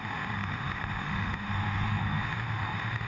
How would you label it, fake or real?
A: fake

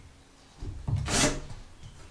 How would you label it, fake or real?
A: real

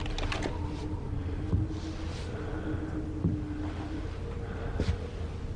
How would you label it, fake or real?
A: real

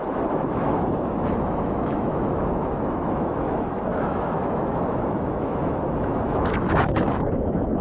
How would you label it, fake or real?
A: fake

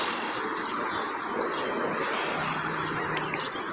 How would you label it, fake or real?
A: real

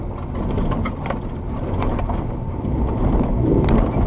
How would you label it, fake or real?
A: real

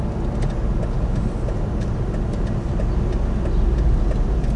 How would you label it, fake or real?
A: real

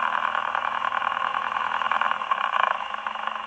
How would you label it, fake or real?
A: fake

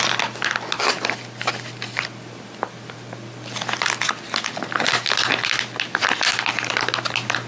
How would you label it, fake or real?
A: real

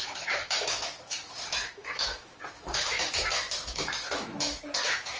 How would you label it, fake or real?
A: fake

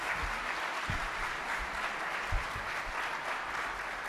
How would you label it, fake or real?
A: real